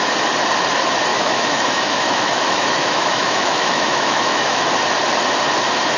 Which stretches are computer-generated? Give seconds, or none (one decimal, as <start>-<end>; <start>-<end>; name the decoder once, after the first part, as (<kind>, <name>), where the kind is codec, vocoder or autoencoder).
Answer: 1.1-4.6 (autoencoder, DAC-VAE)